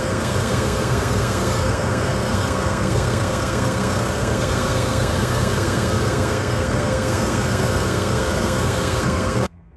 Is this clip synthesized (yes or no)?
yes